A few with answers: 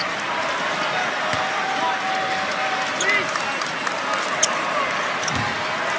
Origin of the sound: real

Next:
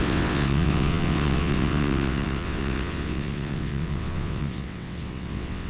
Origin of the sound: fake